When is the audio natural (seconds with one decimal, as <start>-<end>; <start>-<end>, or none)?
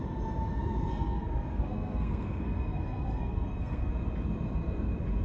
0.0-0.8; 3.9-5.2